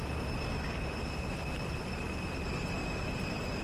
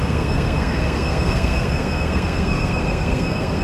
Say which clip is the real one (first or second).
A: first